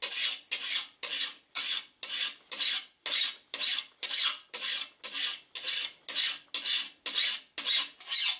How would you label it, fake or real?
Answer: real